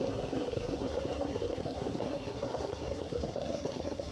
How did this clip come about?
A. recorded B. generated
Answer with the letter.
B